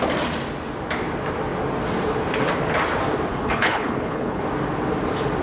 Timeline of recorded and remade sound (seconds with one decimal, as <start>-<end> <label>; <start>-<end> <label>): 0.0-3.3 recorded; 3.3-4.4 remade; 4.4-5.4 recorded